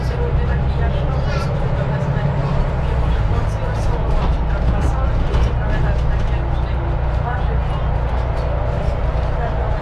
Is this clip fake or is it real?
real